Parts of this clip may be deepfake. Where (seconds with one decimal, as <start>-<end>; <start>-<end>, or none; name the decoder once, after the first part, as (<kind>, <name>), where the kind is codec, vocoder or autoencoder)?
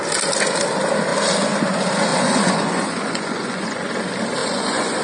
2.1-3.9 (vocoder, Vocos); 4.4-5.0